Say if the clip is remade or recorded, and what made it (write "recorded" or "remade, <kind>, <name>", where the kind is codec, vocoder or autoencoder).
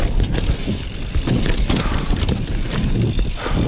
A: recorded